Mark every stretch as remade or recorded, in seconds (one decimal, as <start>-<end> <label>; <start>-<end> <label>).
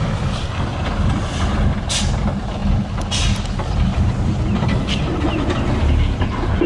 0.0-6.7 recorded